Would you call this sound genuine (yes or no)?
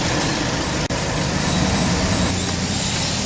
no